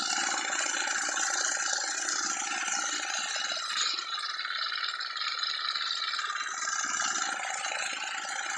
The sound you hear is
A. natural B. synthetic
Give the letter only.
A